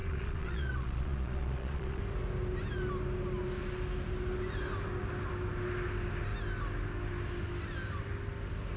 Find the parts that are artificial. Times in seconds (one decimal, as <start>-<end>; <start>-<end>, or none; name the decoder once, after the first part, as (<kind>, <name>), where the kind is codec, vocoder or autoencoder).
0.0-2.0 (vocoder, Vocos)